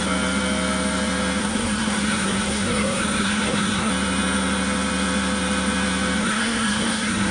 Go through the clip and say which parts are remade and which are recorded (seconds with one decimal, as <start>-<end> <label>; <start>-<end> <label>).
0.0-1.4 recorded; 1.4-3.9 remade; 3.9-6.2 recorded; 6.2-7.3 remade

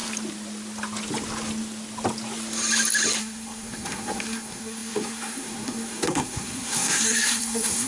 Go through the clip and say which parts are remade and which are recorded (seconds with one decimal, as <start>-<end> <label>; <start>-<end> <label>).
0.0-3.2 recorded; 3.2-7.9 remade

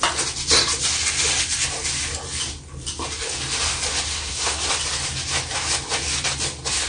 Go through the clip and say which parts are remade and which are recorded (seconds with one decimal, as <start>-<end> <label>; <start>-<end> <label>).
0.0-4.1 recorded; 4.1-4.7 remade; 4.7-6.9 recorded

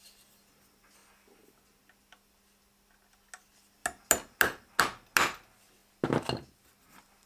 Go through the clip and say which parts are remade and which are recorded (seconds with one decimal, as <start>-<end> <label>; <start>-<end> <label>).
0.0-7.3 recorded

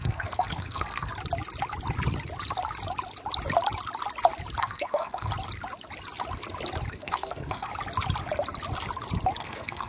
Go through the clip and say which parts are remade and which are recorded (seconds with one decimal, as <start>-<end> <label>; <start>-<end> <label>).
0.0-1.1 remade; 1.1-4.6 recorded; 4.6-5.3 remade; 5.3-6.9 recorded; 6.9-7.7 remade; 7.7-9.4 recorded; 9.4-9.9 remade

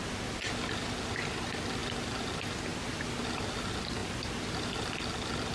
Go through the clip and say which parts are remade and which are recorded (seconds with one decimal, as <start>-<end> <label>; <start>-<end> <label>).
0.0-5.5 recorded